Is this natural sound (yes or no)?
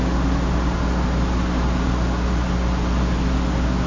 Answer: yes